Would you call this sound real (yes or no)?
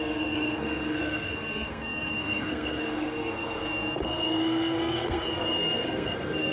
no